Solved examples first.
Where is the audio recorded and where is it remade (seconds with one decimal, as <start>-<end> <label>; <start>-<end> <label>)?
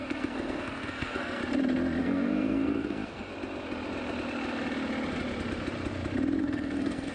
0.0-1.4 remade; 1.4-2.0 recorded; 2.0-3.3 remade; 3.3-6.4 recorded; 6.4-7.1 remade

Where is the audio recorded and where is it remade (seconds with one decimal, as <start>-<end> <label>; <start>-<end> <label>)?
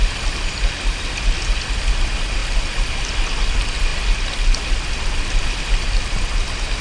0.0-6.8 recorded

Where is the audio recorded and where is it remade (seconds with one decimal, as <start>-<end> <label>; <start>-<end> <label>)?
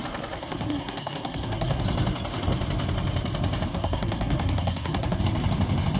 0.0-0.4 recorded; 0.4-1.8 remade; 1.8-3.7 recorded; 3.7-5.2 remade; 5.2-6.0 recorded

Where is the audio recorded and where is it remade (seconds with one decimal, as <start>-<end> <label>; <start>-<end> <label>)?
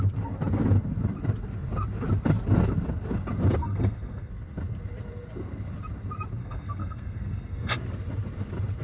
0.0-3.6 recorded; 3.6-4.3 remade; 4.3-6.4 recorded; 6.4-7.7 remade; 7.7-8.8 recorded